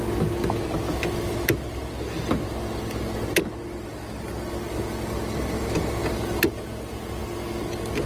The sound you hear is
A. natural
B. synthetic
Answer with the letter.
A